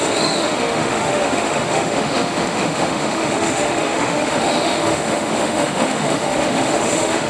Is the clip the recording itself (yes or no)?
no